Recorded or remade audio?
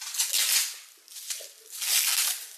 recorded